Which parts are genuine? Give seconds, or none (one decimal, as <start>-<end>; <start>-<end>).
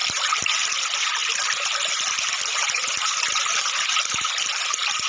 0.0-5.1